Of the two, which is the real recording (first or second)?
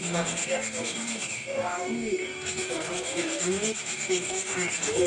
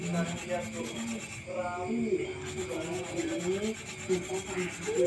second